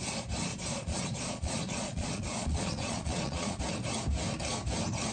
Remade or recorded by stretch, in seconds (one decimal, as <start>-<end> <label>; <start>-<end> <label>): 0.0-0.5 recorded; 0.5-3.6 remade; 3.6-5.1 recorded